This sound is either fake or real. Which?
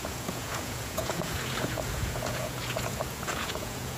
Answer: fake